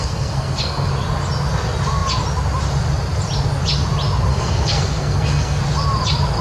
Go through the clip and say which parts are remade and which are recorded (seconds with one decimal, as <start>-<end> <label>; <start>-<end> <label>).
0.0-0.9 remade; 0.9-4.3 recorded; 4.3-5.6 remade; 5.6-6.4 recorded